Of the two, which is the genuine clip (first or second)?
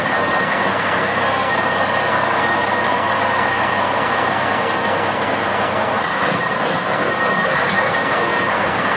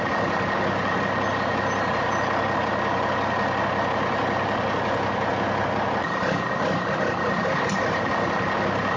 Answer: second